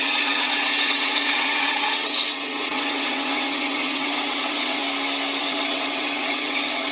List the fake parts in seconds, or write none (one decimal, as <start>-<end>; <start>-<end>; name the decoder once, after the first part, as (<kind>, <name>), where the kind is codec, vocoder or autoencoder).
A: 0.0-4.8 (vocoder, WaveNeXt); 5.4-6.9